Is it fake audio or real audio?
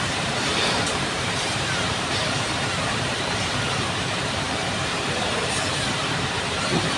fake